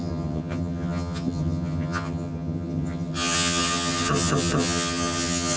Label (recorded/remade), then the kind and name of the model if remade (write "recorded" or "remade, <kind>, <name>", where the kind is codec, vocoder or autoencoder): remade, vocoder, HiFi-GAN